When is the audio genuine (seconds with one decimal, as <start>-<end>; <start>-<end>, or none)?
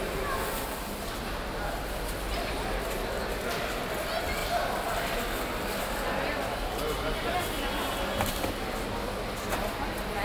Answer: 0.0-10.2